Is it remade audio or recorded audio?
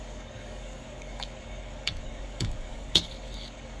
remade